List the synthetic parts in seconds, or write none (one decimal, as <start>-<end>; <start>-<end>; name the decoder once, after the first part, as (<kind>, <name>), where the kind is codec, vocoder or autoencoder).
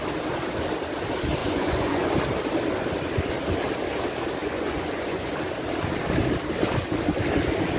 1.4-2.1 (vocoder, Vocos); 4.4-5.3